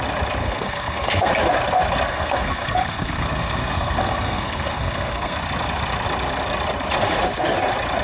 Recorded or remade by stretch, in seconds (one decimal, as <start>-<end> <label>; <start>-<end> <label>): 0.0-0.4 recorded; 0.4-1.3 remade; 1.3-2.1 recorded; 2.1-5.4 remade; 5.4-8.0 recorded